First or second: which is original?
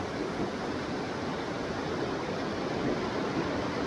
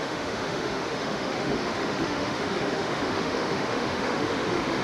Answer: first